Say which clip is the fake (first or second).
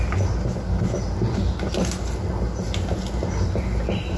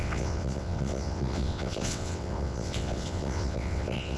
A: second